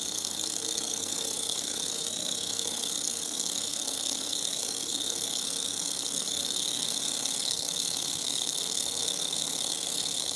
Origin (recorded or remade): remade